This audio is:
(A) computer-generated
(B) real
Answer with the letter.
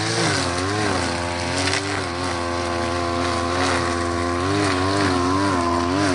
B